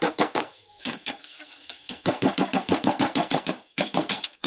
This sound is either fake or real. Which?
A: fake